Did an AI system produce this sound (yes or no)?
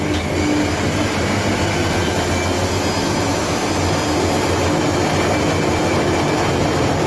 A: no